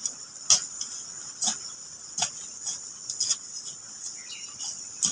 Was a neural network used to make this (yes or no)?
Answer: no